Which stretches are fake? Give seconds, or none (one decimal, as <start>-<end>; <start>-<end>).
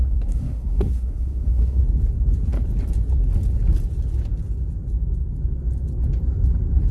0.0-1.8